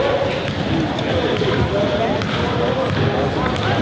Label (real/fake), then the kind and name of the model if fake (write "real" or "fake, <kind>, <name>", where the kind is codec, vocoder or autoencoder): real